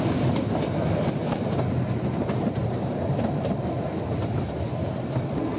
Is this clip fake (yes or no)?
no